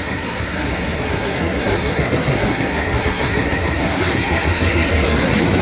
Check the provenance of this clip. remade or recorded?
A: remade